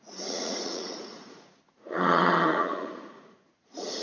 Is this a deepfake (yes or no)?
yes